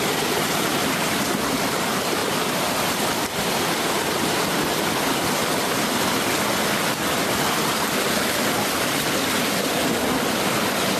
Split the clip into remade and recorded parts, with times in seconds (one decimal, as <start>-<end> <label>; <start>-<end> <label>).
0.0-11.0 recorded